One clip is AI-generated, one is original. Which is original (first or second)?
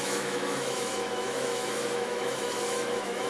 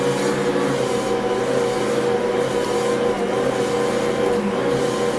second